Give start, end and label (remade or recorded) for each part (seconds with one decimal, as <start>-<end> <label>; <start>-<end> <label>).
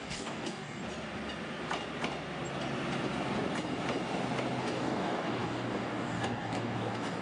0.0-0.8 remade; 0.8-4.6 recorded; 4.6-7.2 remade